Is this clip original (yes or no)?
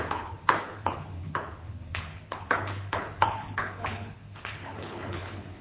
no